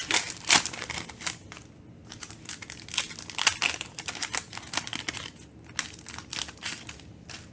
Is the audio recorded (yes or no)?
yes